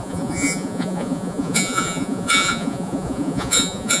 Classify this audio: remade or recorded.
remade